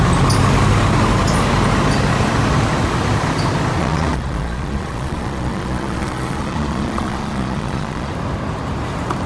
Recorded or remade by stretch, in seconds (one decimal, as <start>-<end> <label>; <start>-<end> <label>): 0.0-3.8 recorded; 3.8-8.1 remade; 8.1-9.3 recorded